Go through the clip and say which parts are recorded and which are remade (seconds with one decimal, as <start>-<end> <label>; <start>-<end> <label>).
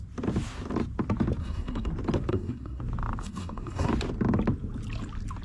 0.0-1.4 recorded; 1.4-1.9 remade; 1.9-2.3 recorded; 2.3-2.8 remade; 2.8-3.2 recorded; 3.2-3.9 remade; 3.9-5.4 recorded